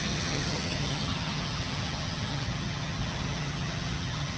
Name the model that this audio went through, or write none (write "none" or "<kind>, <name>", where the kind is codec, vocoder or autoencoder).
vocoder, HiFi-GAN